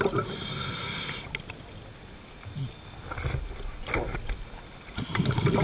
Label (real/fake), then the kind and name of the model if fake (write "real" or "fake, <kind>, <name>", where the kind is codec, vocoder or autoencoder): real